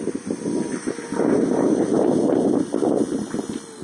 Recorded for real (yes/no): yes